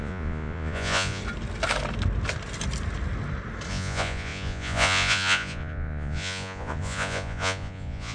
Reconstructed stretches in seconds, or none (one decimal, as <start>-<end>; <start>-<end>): 0.0-1.2; 3.7-8.1